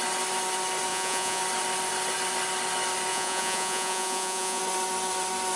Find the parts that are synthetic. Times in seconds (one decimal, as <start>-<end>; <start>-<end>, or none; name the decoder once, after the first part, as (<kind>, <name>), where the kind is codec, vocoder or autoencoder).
0.9-1.4 (vocoder, Vocos); 3.1-4.6